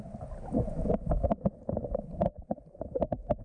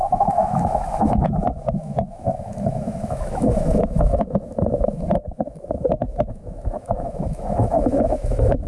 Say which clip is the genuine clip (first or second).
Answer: first